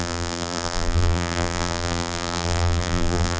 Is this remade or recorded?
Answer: remade